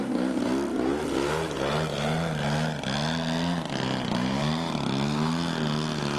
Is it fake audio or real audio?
real